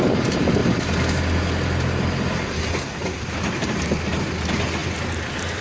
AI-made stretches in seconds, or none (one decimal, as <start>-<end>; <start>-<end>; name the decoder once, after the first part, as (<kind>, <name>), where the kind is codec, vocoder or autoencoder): none